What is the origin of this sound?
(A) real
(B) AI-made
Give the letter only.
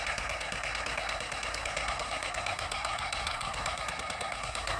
B